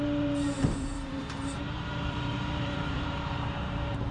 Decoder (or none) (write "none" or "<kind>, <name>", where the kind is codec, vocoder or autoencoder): vocoder, BigVGAN v2